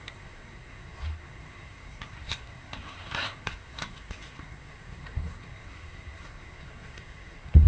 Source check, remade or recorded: remade